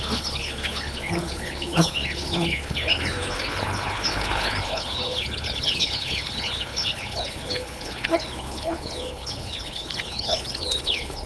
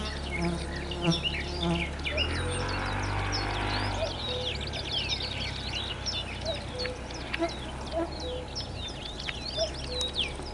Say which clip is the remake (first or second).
first